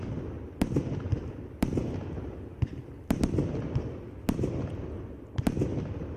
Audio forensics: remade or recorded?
recorded